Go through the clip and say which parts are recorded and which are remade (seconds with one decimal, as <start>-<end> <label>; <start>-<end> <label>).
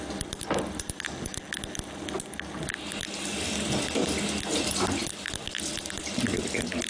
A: 0.0-6.9 recorded